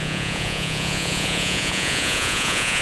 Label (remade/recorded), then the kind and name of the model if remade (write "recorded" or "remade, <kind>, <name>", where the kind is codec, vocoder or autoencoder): remade, vocoder, Vocos